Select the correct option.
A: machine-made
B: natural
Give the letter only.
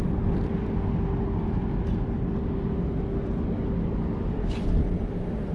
B